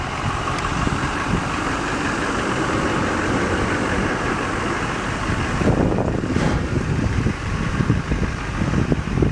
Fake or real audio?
fake